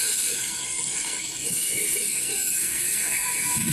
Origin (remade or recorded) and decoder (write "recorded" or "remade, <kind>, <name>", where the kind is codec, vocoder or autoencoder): remade, codec, SNAC